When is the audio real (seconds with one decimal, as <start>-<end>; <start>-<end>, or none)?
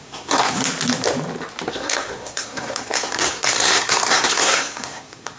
0.6-1.7